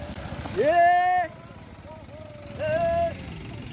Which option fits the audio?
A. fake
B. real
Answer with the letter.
B